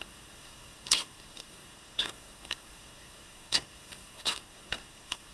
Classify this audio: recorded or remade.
remade